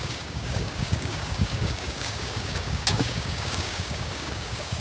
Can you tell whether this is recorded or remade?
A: remade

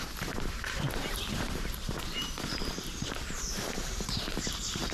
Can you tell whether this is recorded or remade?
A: remade